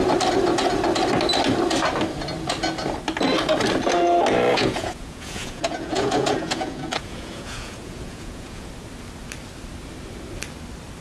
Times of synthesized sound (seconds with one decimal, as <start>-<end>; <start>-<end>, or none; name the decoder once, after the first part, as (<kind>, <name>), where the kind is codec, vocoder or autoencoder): 4.5-8.7 (vocoder, Vocos)